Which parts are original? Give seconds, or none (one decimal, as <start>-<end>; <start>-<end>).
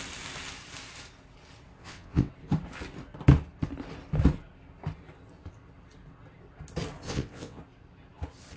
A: 0.0-1.8; 2.3-7.0; 7.6-8.6